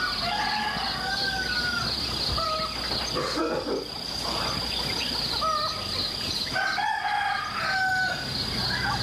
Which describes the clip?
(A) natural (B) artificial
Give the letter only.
A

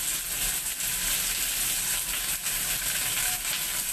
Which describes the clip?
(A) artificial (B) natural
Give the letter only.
B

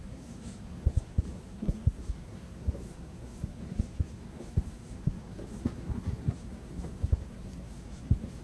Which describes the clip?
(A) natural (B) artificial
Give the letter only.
B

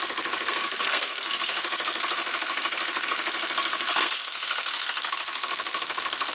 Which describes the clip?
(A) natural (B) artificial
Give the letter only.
B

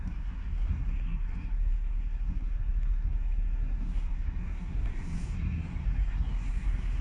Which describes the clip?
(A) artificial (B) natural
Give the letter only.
A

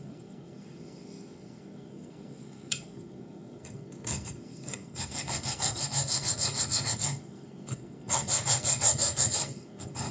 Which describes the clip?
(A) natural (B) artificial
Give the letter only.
B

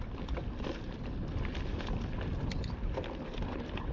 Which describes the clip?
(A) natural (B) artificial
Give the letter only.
A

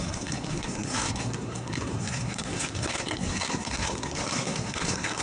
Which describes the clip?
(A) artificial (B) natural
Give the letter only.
A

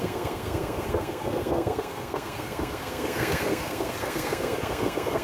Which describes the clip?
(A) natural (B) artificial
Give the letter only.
B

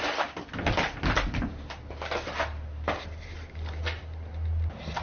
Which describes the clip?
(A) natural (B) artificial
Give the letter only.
A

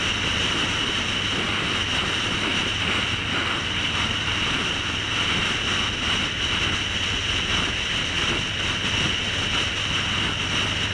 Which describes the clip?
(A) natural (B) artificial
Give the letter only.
A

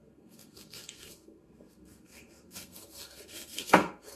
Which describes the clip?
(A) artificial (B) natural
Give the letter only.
A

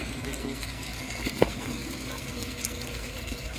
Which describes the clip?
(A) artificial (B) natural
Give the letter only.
A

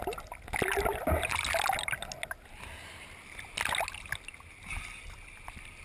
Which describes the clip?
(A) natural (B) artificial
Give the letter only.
A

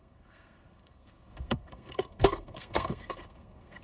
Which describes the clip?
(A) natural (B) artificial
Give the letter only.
B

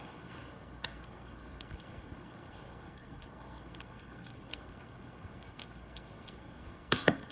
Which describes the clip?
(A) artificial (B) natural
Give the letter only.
A